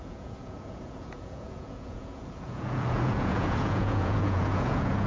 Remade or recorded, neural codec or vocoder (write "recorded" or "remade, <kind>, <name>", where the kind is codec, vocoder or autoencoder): remade, vocoder, Vocos